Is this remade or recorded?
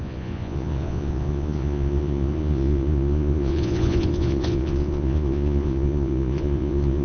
remade